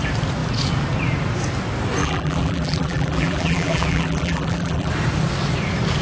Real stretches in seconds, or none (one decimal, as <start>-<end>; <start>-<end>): 0.0-2.0; 4.9-6.0